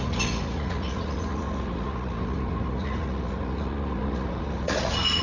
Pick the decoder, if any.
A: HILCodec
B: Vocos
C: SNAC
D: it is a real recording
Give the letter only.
B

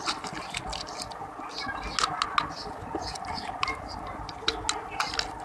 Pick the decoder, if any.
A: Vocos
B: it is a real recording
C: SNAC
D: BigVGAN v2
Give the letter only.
B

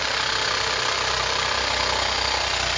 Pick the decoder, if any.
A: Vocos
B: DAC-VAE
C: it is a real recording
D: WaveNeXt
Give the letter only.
C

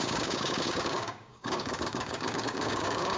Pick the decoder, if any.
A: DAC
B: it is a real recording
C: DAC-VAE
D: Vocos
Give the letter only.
A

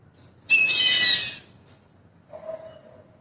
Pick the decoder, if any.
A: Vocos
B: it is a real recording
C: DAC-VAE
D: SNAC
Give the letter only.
B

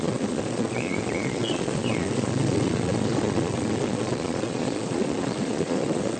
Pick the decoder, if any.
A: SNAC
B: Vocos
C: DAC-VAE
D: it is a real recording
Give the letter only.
B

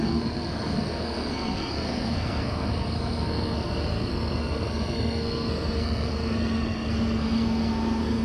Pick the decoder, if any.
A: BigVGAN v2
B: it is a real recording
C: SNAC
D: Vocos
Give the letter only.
C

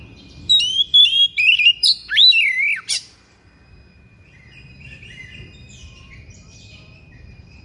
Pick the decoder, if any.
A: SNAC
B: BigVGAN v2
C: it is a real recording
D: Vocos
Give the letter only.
B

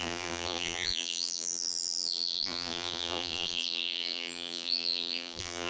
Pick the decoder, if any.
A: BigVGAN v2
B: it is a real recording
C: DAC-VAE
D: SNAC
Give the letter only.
A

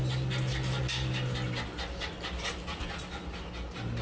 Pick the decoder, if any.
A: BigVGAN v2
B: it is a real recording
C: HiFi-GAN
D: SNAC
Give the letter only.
B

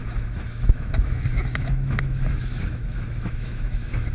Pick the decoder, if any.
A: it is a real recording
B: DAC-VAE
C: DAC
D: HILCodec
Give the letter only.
B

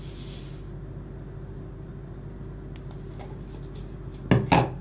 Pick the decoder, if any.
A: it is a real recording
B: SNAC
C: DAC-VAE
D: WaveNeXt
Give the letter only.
A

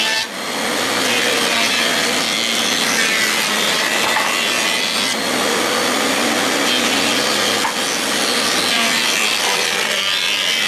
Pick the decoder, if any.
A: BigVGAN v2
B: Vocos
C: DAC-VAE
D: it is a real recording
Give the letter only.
D